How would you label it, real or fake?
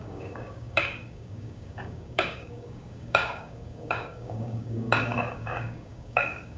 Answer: fake